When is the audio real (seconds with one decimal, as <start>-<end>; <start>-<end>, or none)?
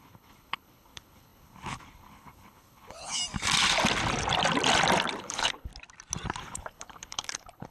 3.2-5.2; 5.7-6.4